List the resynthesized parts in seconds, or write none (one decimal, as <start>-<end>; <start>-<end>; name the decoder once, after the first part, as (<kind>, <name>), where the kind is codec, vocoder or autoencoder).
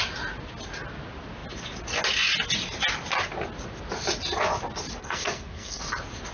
5.0-5.8 (codec, SNAC)